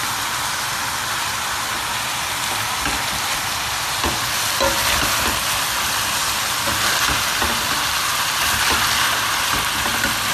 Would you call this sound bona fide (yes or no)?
yes